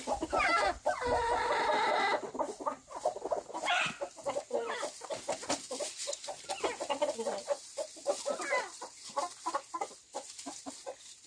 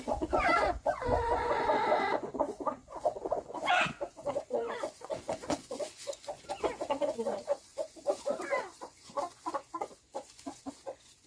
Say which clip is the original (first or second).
first